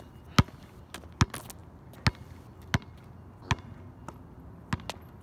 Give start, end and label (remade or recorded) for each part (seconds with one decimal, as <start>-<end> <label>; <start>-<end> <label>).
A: 0.0-5.2 recorded